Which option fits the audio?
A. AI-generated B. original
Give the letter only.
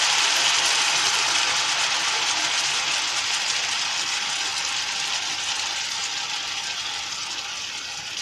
B